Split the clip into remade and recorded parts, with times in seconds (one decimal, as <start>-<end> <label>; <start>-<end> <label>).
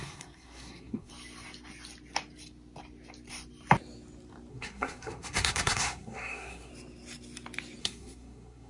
0.0-1.1 remade; 1.1-4.5 recorded; 4.5-6.7 remade; 6.7-7.8 recorded; 7.8-8.7 remade